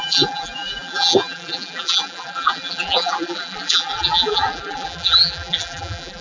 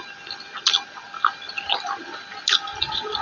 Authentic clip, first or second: second